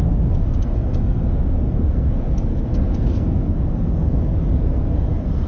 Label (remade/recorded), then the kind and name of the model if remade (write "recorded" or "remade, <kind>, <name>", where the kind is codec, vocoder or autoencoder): remade, codec, SNAC